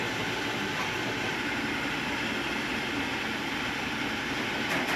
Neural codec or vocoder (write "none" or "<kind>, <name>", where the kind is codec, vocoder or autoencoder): none